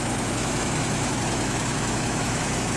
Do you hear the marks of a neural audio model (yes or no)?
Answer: yes